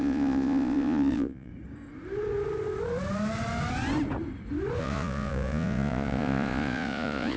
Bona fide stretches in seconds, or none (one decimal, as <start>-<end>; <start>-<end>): 1.5-4.8